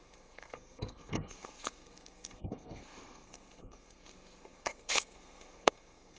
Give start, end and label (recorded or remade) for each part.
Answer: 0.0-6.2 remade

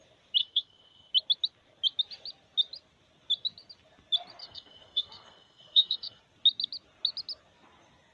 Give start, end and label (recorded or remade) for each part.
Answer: 0.0-0.4 recorded; 0.4-1.1 remade; 1.1-4.4 recorded; 4.4-6.2 remade; 6.2-8.1 recorded